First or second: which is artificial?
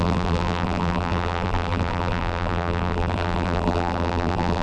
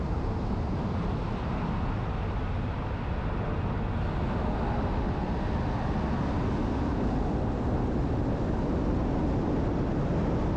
first